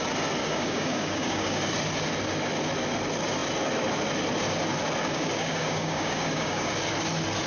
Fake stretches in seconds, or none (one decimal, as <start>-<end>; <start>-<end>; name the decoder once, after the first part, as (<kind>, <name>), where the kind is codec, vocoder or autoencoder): 0.4-1.6 (codec, DAC); 5.0-6.7